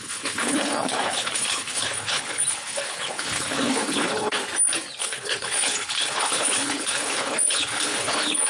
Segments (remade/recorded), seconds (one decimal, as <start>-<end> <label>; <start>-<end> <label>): 0.0-4.4 remade; 4.4-5.0 recorded; 5.0-8.5 remade